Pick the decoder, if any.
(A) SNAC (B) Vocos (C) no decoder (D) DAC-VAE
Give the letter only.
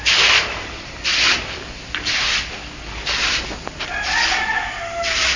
C